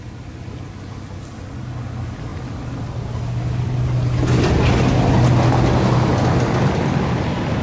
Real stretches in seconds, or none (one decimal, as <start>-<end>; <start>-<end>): 0.0-7.6